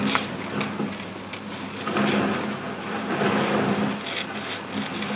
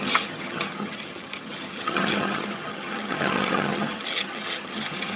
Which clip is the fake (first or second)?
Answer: second